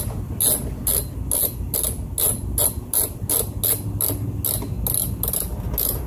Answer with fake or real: real